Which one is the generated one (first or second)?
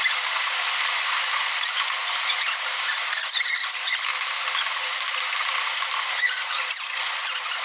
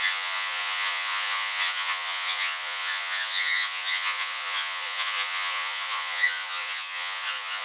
second